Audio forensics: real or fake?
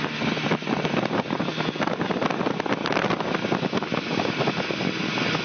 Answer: real